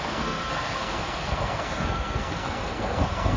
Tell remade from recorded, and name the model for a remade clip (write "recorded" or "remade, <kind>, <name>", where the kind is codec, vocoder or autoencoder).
remade, codec, SNAC